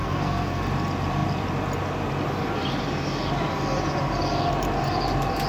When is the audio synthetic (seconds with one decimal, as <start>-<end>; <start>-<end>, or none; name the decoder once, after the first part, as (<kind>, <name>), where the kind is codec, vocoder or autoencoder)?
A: 0.0-0.6 (codec, SNAC)